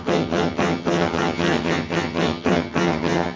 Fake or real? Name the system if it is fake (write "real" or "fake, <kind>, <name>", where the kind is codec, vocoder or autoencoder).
fake, vocoder, HiFi-GAN